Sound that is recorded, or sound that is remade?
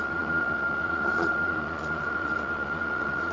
remade